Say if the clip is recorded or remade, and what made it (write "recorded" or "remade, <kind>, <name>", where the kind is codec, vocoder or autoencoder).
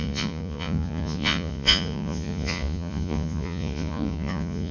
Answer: remade, vocoder, Vocos